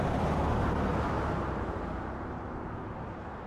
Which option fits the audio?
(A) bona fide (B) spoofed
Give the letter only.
A